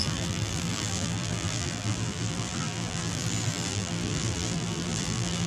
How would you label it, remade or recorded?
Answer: remade